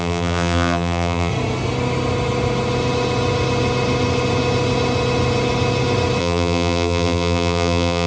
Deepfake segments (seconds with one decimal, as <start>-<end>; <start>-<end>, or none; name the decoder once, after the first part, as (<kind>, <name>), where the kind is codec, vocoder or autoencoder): 0.0-1.3 (vocoder, BigVGAN v2); 6.2-8.1

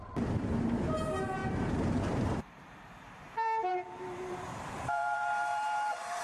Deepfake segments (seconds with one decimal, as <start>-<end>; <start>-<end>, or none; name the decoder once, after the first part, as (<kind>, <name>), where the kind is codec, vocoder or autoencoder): 0.0-6.2 (vocoder, BigVGAN v2)

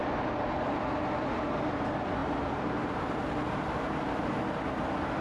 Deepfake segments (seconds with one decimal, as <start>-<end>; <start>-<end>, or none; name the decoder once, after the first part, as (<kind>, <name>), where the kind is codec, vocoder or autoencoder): 2.2-3.6 (vocoder, BigVGAN v2)

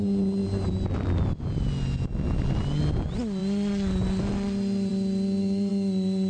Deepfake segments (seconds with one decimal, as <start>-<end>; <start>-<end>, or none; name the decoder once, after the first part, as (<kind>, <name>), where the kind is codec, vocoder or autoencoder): 3.4-4.2 (vocoder, BigVGAN v2); 4.9-5.7

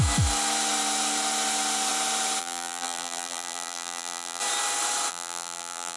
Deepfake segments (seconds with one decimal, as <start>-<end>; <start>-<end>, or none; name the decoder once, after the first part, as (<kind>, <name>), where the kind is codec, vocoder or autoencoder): 2.4-4.4 (vocoder, BigVGAN v2); 5.1-6.0

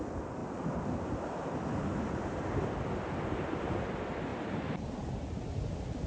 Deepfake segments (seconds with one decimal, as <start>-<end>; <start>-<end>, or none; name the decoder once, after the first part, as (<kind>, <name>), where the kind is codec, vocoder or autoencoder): 0.4-2.7 (vocoder, BigVGAN v2); 4.3-4.9

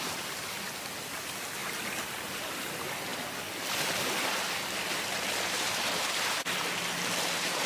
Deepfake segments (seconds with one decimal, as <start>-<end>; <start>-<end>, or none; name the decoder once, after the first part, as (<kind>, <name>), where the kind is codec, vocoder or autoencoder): 3.1-6.6 (vocoder, BigVGAN v2)

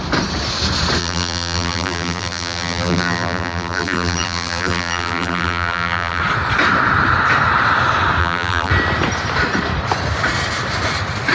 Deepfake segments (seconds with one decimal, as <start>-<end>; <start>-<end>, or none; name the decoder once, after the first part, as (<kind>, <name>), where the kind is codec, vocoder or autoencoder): 1.0-6.2 (vocoder, BigVGAN v2); 8.2-8.7